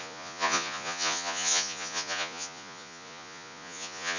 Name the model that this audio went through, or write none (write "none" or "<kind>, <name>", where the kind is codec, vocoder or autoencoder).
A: vocoder, Vocos